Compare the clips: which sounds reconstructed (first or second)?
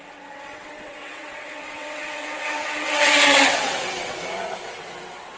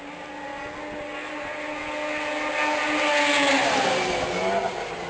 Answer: first